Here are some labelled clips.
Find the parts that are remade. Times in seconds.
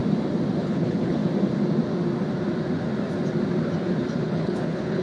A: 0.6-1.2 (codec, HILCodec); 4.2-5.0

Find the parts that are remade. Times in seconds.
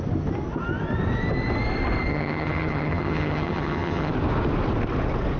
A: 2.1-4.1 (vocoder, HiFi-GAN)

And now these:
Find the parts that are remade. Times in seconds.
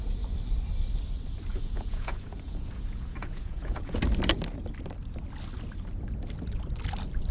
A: 1.5-4.0 (vocoder, Vocos)